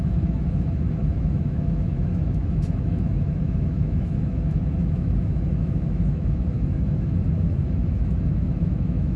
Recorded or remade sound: remade